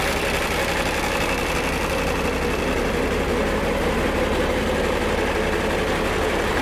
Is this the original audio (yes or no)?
yes